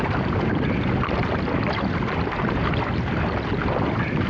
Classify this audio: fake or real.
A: real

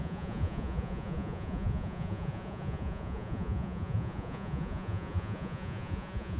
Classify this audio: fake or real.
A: fake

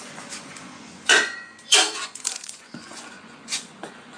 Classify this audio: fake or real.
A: fake